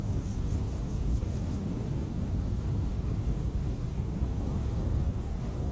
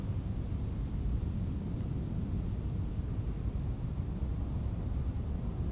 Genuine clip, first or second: second